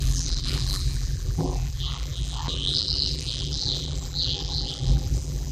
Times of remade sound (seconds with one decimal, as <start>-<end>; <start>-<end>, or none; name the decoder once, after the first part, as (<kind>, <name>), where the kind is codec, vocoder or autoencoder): 0.0-5.5 (vocoder, BigVGAN v2)